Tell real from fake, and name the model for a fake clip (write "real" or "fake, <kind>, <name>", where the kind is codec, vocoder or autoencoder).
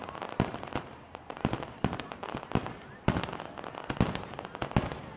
real